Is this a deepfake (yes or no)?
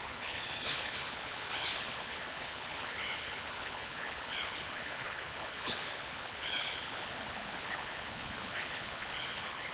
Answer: yes